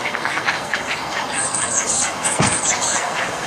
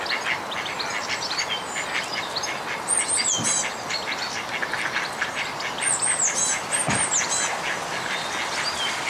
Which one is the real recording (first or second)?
second